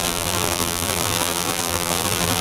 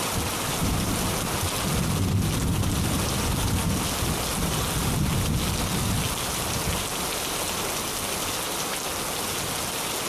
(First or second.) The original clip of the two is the second